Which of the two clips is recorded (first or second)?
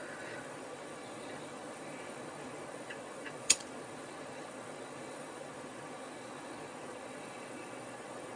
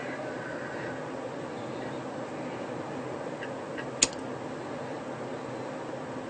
second